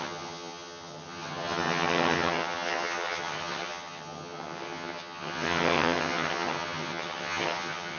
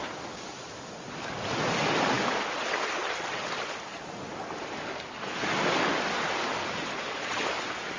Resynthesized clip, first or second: first